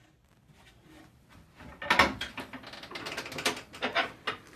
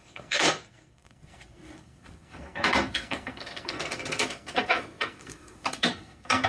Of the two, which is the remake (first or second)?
second